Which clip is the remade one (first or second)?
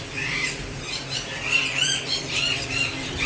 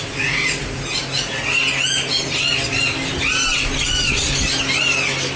first